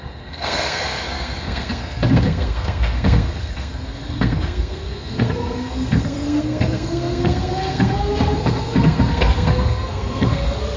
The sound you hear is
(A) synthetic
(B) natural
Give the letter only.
A